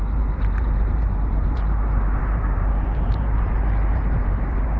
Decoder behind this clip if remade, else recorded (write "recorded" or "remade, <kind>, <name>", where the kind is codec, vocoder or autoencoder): remade, vocoder, BigVGAN v2